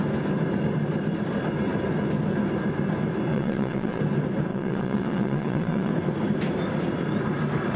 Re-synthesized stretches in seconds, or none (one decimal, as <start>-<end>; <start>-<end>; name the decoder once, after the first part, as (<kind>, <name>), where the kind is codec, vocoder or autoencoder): 3.3-4.0 (vocoder, WaveNeXt); 4.5-5.9

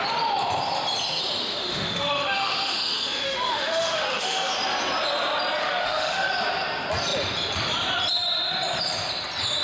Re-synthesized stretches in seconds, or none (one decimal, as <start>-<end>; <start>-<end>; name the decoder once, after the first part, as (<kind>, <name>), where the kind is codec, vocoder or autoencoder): 1.4-4.5 (autoencoder, DAC-VAE); 5.6-6.3

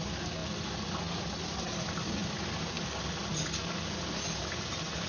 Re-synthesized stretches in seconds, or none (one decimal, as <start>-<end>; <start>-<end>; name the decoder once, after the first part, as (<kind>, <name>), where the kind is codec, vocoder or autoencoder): none

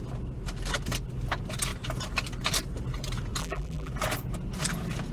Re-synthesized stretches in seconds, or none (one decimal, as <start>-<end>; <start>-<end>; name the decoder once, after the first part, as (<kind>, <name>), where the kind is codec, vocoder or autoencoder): 3.4-3.9 (vocoder, BigVGAN v2)

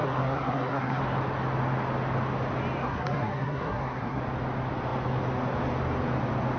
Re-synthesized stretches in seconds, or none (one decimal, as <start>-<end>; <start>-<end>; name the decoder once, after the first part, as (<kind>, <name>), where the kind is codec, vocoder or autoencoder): 0.0-1.0 (codec, SNAC); 2.8-4.2